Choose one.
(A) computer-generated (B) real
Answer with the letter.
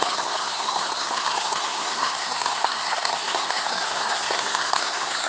A